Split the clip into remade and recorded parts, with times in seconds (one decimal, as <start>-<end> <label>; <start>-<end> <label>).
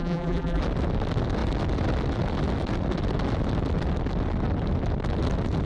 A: 0.0-0.6 remade; 0.6-5.7 recorded